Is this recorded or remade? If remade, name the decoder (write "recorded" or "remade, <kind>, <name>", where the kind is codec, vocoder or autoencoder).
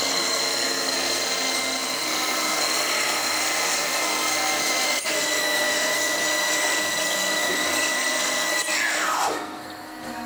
remade, codec, SNAC